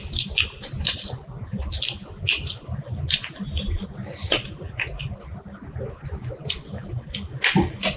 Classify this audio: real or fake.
real